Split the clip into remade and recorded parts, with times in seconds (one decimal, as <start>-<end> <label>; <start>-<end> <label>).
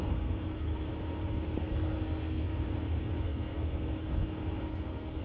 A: 0.0-0.9 remade; 0.9-1.6 recorded; 1.6-2.5 remade; 2.5-3.2 recorded; 3.2-3.9 remade; 3.9-4.7 recorded; 4.7-5.2 remade